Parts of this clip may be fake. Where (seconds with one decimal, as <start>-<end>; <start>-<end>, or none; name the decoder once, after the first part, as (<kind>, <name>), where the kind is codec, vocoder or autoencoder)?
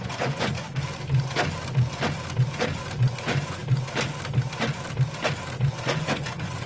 0.0-0.6 (vocoder, Vocos); 3.0-3.6; 5.7-6.7